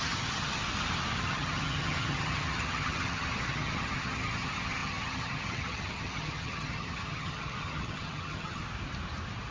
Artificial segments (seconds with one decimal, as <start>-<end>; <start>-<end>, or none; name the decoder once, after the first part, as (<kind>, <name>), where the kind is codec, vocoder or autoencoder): 0.0-0.6 (vocoder, HiFi-GAN); 1.2-8.6